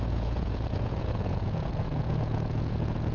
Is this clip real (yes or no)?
no